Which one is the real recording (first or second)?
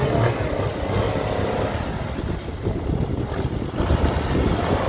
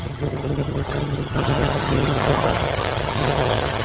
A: first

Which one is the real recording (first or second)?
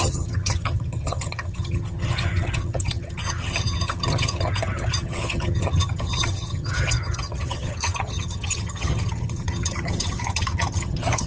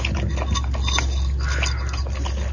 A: second